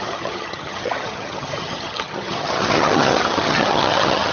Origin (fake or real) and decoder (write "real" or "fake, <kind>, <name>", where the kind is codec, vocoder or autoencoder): fake, vocoder, HiFi-GAN